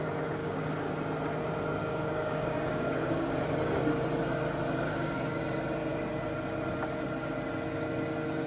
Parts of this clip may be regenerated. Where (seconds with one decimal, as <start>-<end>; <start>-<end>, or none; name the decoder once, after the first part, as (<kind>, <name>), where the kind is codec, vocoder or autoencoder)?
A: 0.4-0.9 (codec, DAC); 1.8-3.3; 4.9-5.4